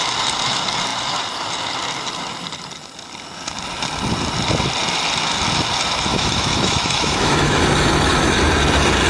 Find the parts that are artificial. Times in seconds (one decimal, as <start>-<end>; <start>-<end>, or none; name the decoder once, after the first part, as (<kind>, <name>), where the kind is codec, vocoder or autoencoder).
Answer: 6.1-7.6 (autoencoder, DAC-VAE)